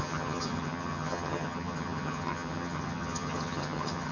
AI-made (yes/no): yes